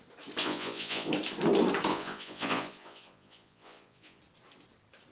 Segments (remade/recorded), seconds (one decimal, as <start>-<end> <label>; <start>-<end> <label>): 0.0-0.4 recorded; 0.4-1.1 remade; 1.1-1.9 recorded; 1.9-4.2 remade; 4.2-5.1 recorded